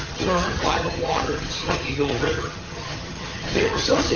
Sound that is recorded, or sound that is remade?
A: remade